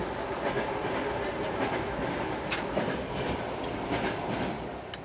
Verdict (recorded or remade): recorded